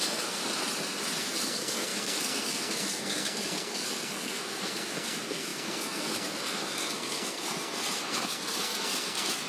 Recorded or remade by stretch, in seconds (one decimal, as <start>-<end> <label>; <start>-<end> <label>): 0.0-0.4 remade; 0.4-1.2 recorded; 1.2-9.5 remade